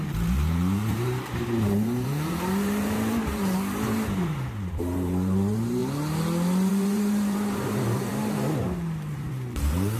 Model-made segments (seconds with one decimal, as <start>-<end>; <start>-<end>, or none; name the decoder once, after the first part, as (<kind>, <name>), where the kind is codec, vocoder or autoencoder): 0.0-5.8 (vocoder, BigVGAN v2); 6.7-8.1; 9.1-10.0